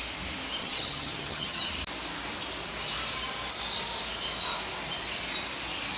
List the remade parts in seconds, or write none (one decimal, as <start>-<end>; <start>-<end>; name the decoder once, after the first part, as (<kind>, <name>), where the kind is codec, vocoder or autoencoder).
0.6-1.7 (vocoder, HiFi-GAN)